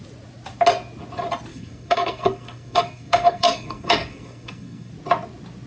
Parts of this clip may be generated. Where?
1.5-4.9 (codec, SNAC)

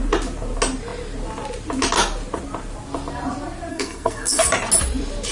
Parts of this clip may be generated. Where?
3.7-4.5 (codec, SNAC)

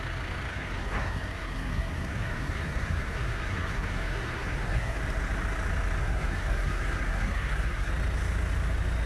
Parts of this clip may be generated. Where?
0.5-5.0 (codec, SNAC); 6.0-7.9

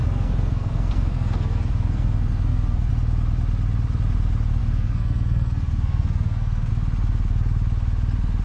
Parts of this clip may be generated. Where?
0.0-2.9 (codec, SNAC); 4.6-6.7